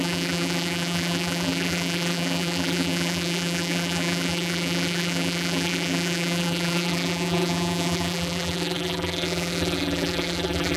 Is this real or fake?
fake